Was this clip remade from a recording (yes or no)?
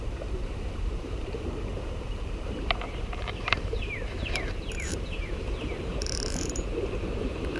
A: yes